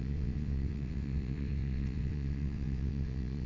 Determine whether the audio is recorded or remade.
remade